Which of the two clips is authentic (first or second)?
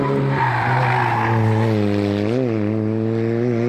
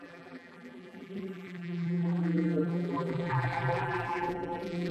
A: first